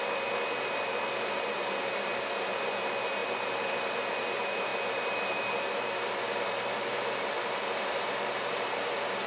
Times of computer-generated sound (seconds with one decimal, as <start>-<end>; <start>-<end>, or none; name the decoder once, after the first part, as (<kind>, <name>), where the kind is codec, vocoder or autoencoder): 0.0-9.3 (vocoder, BigVGAN v2)